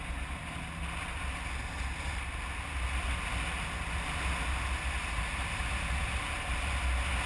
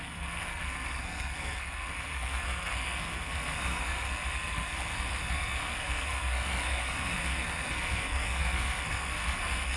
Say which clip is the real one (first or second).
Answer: first